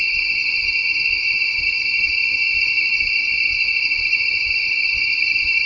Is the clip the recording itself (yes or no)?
yes